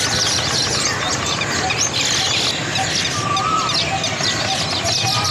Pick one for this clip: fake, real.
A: real